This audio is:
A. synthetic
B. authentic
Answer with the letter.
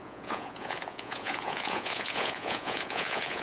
A